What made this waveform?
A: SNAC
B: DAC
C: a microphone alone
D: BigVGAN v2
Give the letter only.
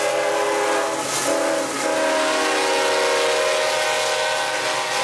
C